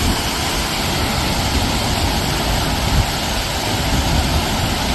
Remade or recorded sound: recorded